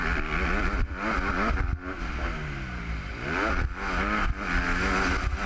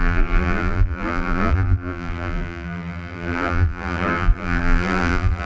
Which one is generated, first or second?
second